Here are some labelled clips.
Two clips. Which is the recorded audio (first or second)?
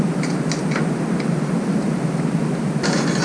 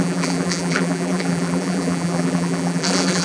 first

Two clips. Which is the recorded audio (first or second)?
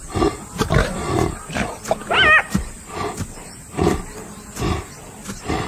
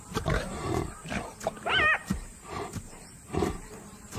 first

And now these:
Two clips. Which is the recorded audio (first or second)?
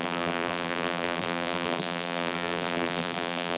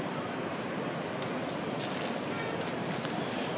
second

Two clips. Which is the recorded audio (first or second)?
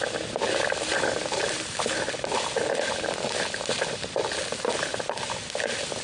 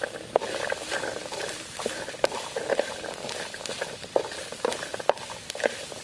first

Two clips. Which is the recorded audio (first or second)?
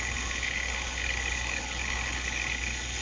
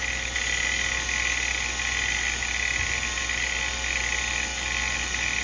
second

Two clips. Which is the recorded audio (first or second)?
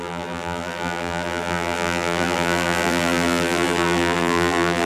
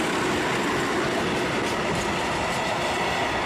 second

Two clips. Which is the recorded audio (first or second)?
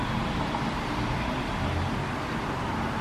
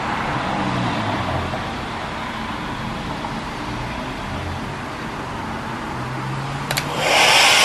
second